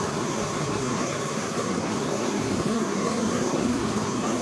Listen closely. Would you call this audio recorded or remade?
remade